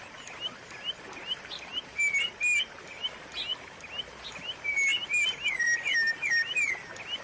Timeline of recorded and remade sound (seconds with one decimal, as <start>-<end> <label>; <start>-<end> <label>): 0.0-7.2 recorded